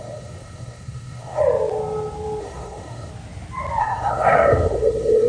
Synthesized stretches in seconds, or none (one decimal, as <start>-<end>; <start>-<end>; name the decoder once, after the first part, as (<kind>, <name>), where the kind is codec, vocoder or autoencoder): 0.0-1.4 (codec, SNAC); 2.4-3.1; 3.8-5.3